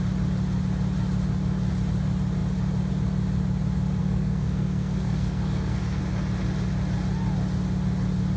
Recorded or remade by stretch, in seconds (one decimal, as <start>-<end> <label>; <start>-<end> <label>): 0.0-4.0 recorded; 4.0-6.0 remade; 6.0-8.4 recorded